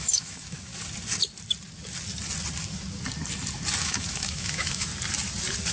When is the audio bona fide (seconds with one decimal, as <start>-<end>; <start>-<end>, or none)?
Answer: 0.7-3.8; 4.9-5.7